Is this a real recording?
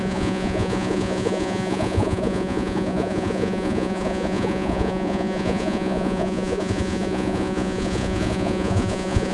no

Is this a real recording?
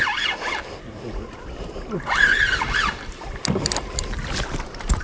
yes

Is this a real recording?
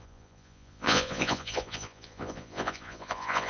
no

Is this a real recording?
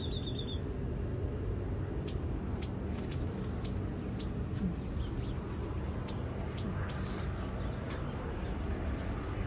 yes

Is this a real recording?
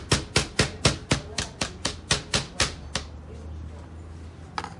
yes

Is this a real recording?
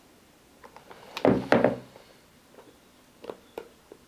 yes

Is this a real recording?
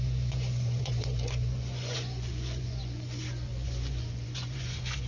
no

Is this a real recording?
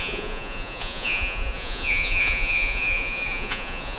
no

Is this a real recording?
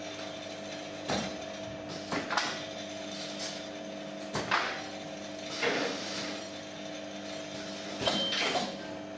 yes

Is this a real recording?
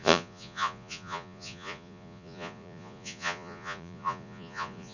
no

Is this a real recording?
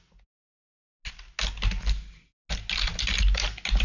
yes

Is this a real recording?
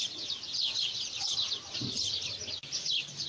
yes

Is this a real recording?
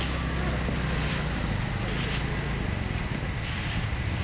yes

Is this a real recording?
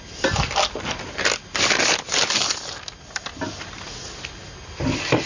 yes